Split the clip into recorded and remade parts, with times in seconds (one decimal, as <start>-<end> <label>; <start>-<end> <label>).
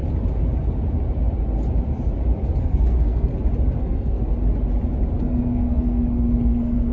0.0-2.6 recorded; 2.6-3.3 remade; 3.3-3.8 recorded; 3.8-4.3 remade; 4.3-5.2 recorded; 5.2-6.9 remade